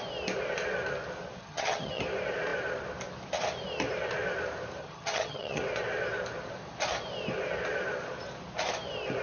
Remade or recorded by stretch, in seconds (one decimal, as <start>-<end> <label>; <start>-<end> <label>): 0.0-1.4 recorded; 1.4-2.0 remade; 2.0-4.8 recorded; 4.8-5.6 remade; 5.6-9.2 recorded